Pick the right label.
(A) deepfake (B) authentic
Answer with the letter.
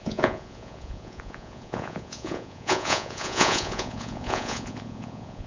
A